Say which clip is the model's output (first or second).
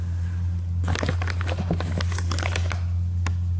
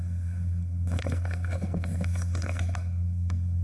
second